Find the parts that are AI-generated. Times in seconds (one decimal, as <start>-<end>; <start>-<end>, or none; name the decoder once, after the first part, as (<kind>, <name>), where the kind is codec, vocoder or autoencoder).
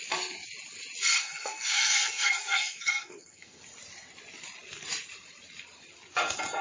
1.2-3.6 (codec, SNAC)